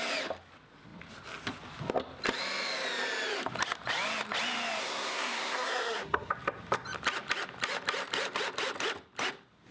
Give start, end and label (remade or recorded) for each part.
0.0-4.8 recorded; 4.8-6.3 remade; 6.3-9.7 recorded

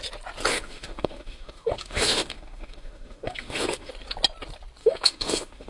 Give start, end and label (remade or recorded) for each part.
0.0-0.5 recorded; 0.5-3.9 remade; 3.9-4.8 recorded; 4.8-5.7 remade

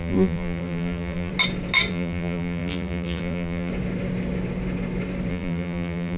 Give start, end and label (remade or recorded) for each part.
0.0-1.3 remade; 1.3-1.9 recorded; 1.9-3.7 remade; 3.7-5.3 recorded; 5.3-6.2 remade

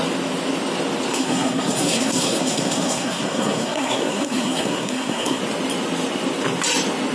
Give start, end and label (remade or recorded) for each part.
0.0-1.1 recorded; 1.1-5.4 remade; 5.4-7.1 recorded

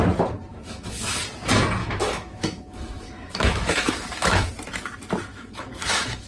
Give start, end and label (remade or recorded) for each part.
0.0-0.5 recorded; 0.5-1.2 remade; 1.2-1.8 recorded; 1.8-4.5 remade; 4.5-5.3 recorded; 5.3-6.3 remade

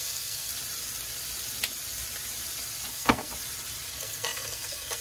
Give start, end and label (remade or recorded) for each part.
0.0-0.5 remade; 0.5-2.9 recorded; 2.9-3.3 remade; 3.3-3.9 recorded; 3.9-5.0 remade

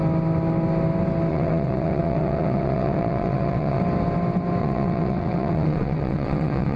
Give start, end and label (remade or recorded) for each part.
0.0-1.3 recorded; 1.3-3.8 remade; 3.8-4.6 recorded; 4.6-6.8 remade